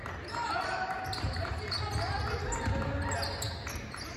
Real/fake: real